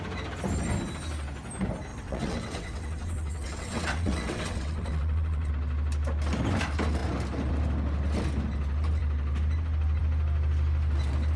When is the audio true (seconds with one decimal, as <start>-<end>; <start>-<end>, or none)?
0.0-1.9; 5.5-11.4